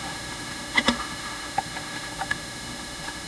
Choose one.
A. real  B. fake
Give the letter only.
B